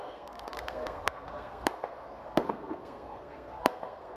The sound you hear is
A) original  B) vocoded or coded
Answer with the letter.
B